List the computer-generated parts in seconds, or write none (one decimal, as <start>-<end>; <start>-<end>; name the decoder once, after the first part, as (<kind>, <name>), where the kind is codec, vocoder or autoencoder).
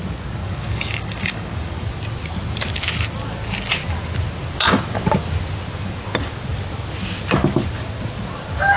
0.4-1.9 (codec, DAC)